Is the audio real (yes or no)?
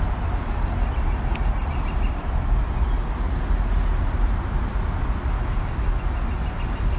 yes